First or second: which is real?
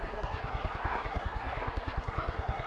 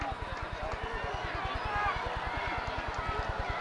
second